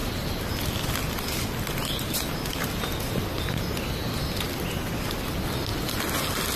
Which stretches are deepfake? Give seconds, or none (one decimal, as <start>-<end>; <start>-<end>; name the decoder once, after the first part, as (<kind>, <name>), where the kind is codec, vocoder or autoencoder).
none

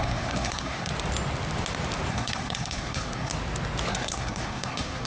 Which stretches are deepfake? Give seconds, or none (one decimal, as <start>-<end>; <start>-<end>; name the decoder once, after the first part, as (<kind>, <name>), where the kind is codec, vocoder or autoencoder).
0.0-0.9 (codec, SNAC); 2.1-3.3; 3.9-5.1

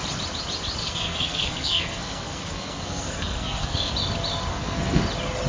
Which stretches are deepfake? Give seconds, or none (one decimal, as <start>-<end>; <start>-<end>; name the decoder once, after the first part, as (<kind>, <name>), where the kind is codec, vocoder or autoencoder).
0.8-3.9 (codec, SNAC); 4.5-5.0

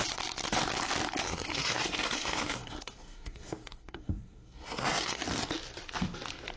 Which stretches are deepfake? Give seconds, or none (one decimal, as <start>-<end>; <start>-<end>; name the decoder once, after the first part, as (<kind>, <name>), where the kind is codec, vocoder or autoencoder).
1.2-5.2 (codec, SNAC)

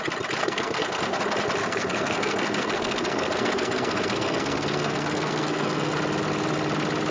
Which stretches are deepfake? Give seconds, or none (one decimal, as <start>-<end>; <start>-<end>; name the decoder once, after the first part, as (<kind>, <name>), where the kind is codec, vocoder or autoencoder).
0.4-1.2 (codec, SNAC); 1.6-5.9

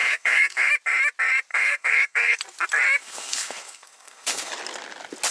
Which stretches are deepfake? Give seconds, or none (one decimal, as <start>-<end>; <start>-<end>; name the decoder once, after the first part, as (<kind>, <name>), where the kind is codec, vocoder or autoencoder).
0.0-0.7 (codec, SNAC); 1.5-2.4; 3.0-4.5

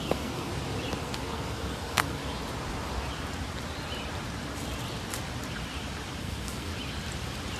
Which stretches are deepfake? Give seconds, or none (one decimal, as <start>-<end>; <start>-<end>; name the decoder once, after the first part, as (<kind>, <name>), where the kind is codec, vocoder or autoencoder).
0.0-0.5 (codec, SNAC); 1.0-2.2; 6.2-6.7